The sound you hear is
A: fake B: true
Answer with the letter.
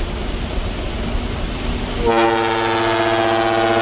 B